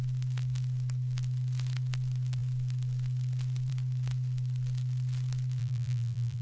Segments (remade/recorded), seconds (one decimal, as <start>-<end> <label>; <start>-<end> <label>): 0.0-5.6 recorded; 5.6-6.4 remade